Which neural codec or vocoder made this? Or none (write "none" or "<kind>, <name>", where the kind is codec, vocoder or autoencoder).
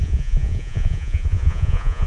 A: vocoder, Vocos